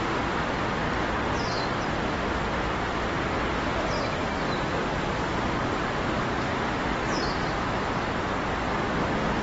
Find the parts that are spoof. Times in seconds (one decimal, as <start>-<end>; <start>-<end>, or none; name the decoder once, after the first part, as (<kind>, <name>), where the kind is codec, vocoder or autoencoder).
5.6-8.1 (vocoder, BigVGAN v2)